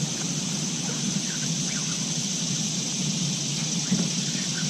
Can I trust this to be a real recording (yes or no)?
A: yes